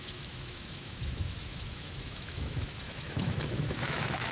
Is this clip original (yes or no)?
no